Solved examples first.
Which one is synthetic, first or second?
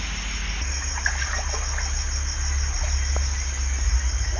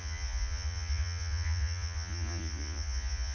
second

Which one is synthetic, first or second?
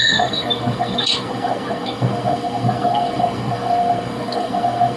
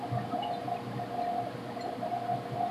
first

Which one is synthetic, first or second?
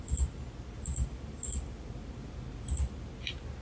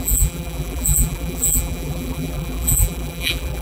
second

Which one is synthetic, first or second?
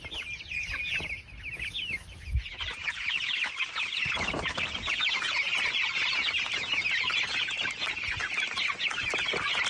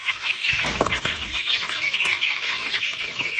second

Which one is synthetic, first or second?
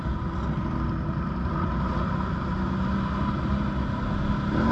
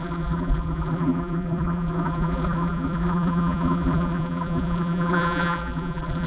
second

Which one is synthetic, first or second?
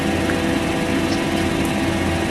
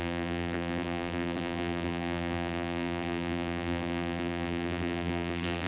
second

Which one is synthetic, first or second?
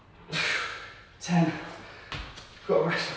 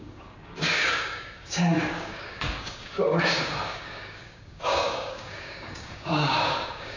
second